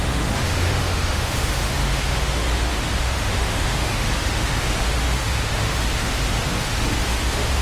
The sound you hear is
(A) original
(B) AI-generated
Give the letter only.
B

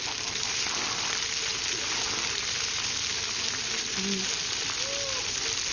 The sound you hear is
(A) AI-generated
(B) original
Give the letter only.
B